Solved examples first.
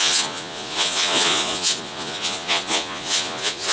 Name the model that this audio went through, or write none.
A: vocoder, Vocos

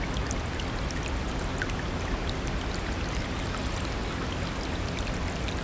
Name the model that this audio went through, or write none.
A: none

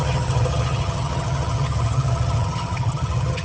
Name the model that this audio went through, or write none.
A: vocoder, HiFi-GAN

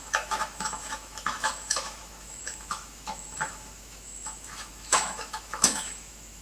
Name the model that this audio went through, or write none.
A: autoencoder, DAC-VAE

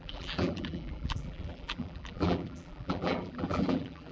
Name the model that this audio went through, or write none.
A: vocoder, BigVGAN v2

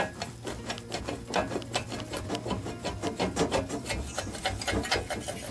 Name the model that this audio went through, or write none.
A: none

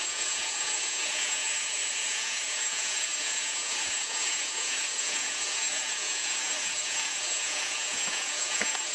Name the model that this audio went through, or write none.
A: vocoder, Vocos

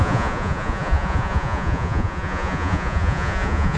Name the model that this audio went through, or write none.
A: vocoder, Vocos